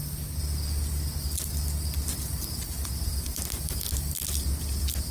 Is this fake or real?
real